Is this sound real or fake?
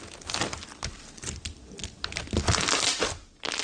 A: real